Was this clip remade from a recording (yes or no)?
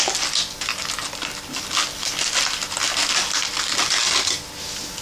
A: no